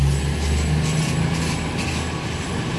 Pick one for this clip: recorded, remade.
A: recorded